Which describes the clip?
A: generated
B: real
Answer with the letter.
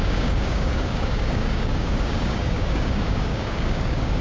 A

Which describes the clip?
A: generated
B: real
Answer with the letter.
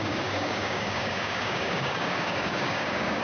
A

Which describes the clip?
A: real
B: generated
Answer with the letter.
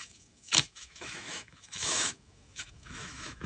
B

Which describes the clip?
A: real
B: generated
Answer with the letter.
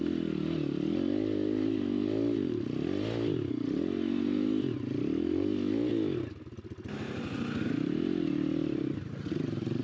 A